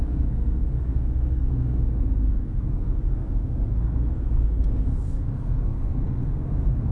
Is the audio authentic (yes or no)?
no